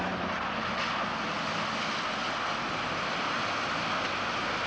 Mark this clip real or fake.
real